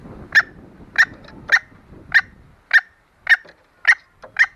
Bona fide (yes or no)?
yes